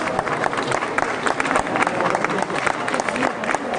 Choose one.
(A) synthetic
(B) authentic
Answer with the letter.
B